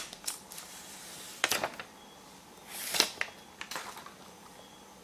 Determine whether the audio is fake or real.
fake